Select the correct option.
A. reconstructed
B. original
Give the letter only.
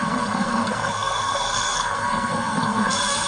A